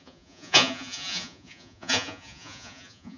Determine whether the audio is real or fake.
fake